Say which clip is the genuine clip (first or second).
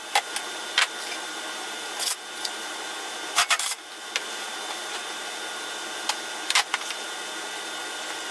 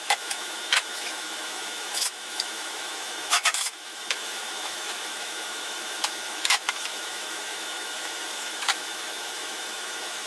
first